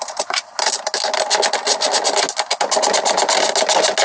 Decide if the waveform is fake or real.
real